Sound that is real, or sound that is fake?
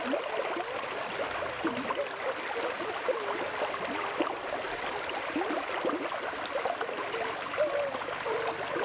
real